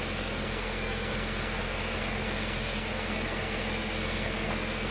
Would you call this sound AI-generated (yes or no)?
yes